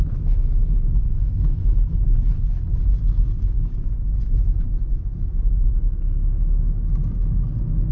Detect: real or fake real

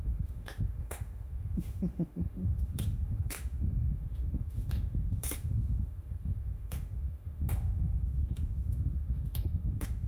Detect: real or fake fake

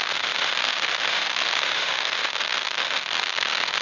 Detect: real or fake fake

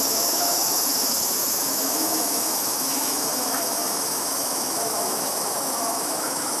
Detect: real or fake fake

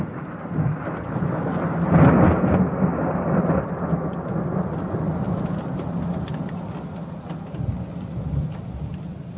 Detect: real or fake real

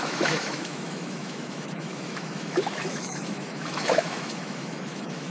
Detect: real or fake fake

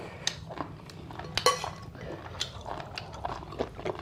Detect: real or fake real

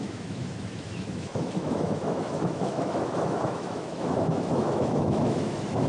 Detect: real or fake fake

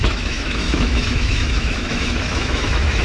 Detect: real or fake fake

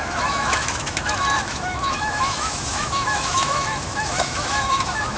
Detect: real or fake fake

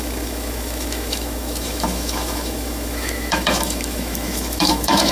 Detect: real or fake fake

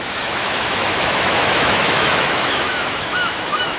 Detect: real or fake fake